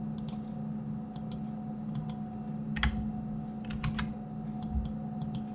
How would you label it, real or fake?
real